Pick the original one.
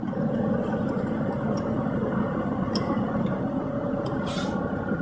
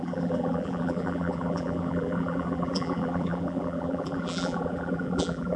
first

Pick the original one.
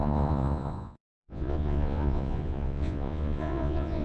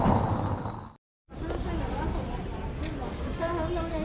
second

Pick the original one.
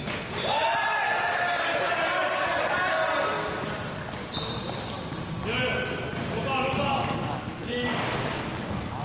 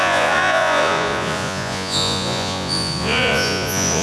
first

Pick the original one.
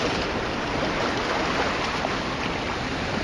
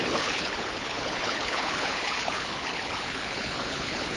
first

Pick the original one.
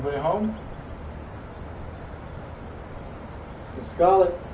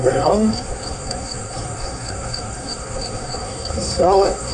first